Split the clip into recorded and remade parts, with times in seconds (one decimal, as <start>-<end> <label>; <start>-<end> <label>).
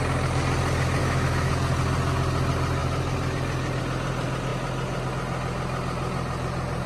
0.0-1.0 recorded; 1.0-1.5 remade; 1.5-6.9 recorded